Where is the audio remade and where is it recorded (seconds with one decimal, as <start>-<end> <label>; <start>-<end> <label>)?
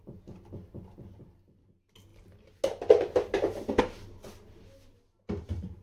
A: 0.0-5.8 recorded